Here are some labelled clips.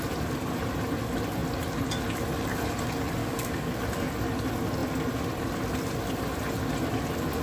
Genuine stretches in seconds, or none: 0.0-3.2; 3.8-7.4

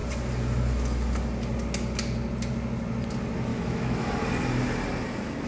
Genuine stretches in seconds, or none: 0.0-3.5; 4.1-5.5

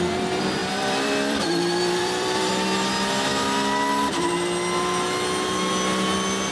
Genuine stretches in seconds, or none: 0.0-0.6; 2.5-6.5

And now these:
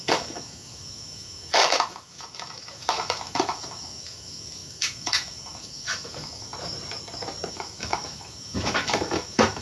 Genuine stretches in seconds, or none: 6.5-7.5

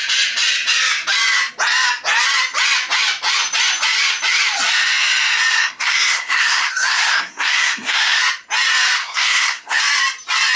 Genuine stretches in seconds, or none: 0.0-5.6; 8.2-9.0; 9.8-10.6